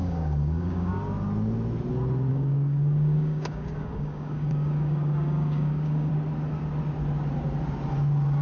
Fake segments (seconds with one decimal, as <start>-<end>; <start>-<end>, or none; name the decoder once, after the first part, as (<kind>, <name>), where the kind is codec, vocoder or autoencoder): 0.0-0.9 (codec, DAC); 2.3-6.1